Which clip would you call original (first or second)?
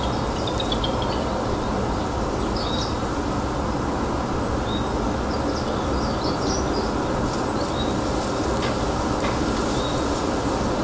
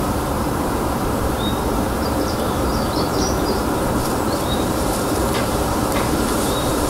first